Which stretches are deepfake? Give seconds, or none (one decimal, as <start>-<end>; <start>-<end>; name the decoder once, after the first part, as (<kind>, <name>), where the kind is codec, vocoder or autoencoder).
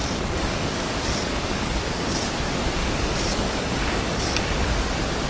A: 0.0-2.3 (codec, DAC); 2.8-4.2